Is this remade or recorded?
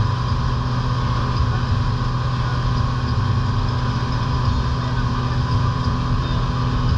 recorded